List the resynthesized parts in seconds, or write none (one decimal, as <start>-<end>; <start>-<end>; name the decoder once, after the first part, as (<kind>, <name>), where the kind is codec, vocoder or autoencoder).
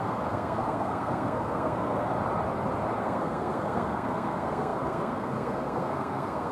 0.0-2.1 (codec, SNAC); 3.0-6.5